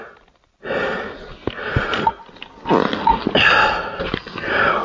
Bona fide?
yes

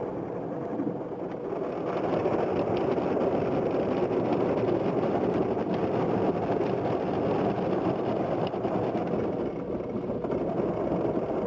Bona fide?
yes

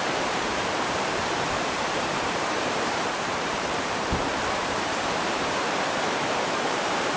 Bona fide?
no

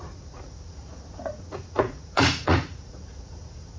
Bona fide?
no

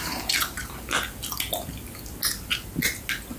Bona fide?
yes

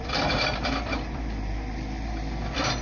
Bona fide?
no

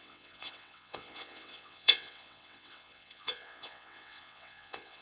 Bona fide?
no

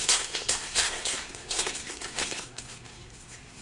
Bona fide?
no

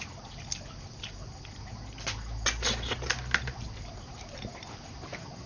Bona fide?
yes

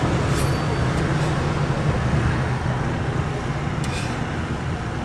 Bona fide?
yes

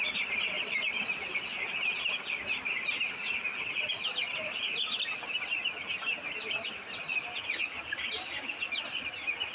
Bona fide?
no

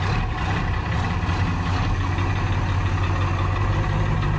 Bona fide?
yes